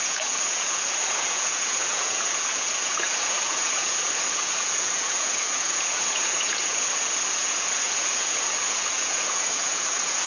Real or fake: fake